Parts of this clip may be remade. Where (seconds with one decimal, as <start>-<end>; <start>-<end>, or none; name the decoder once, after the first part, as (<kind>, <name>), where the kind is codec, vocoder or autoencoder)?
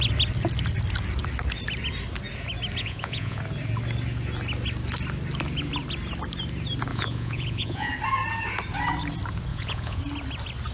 2.8-3.4 (vocoder, Vocos); 6.9-7.9; 9.5-10.0